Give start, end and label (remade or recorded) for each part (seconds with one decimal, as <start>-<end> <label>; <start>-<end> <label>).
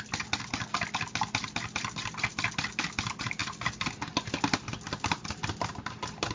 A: 0.0-6.3 recorded